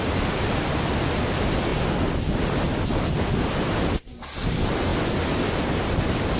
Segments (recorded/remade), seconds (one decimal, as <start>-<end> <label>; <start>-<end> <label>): 0.0-6.4 recorded